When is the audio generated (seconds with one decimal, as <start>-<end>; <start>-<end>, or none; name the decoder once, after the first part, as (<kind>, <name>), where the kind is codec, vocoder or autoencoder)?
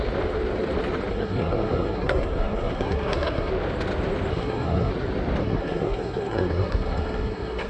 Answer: 1.1-3.5 (codec, SNAC); 4.3-4.9; 5.4-7.7